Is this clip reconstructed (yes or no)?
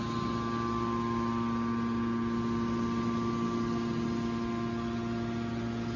no